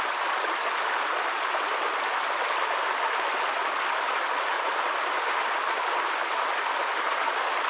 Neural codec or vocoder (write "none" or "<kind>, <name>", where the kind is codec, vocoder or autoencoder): none